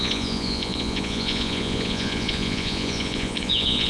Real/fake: fake